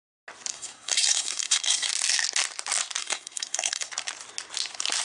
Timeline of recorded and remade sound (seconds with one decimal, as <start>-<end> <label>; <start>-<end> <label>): 0.0-0.5 recorded; 0.5-1.9 remade; 1.9-3.0 recorded; 3.0-3.9 remade; 3.9-5.0 recorded